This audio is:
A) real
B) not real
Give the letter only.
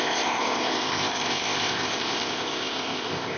B